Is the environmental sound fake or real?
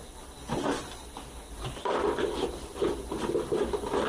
real